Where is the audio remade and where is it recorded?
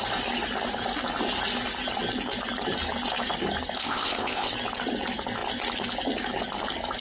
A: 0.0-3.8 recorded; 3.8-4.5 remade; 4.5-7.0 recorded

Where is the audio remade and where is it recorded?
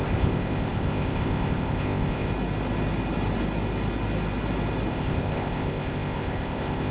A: 0.0-2.3 remade; 2.3-4.9 recorded; 4.9-6.9 remade